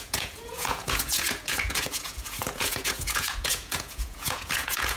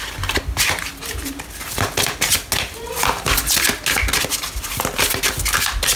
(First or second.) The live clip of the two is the second